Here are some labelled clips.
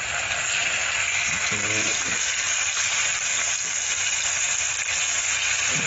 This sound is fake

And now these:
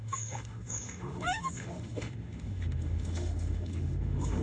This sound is fake